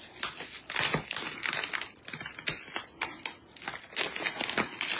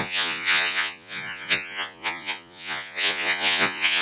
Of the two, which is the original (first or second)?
first